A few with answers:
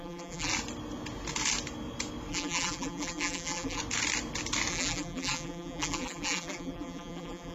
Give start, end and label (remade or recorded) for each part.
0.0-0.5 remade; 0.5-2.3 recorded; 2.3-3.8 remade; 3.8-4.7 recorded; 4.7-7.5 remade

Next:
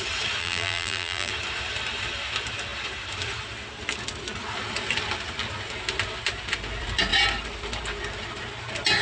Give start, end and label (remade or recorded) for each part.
0.0-0.4 recorded; 0.4-1.3 remade; 1.3-9.0 recorded

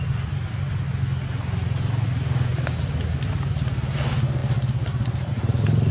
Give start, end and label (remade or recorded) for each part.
0.0-5.9 recorded